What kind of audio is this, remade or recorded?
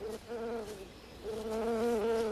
recorded